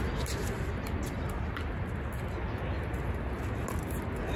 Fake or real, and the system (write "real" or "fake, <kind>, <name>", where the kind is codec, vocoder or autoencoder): real